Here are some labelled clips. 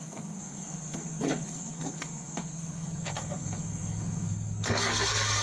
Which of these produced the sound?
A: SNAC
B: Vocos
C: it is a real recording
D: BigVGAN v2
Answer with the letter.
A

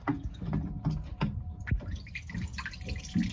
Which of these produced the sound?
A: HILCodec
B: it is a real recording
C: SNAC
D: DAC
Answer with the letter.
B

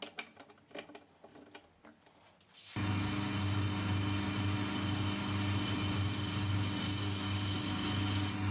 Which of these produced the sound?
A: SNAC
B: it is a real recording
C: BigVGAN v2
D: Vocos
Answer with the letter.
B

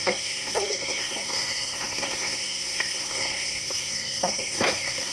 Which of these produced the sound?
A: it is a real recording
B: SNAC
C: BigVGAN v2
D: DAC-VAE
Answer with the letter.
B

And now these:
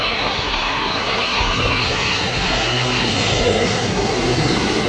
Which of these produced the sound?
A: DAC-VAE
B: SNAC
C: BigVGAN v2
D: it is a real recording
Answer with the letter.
B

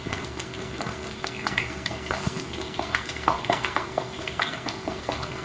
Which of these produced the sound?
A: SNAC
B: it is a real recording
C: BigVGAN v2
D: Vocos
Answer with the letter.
A